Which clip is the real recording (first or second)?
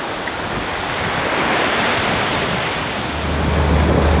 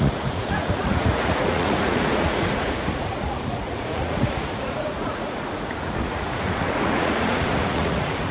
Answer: first